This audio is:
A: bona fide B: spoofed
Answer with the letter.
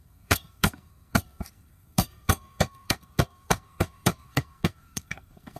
B